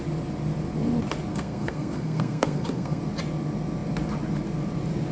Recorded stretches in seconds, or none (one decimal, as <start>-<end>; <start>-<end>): 0.0-1.3; 3.0-5.1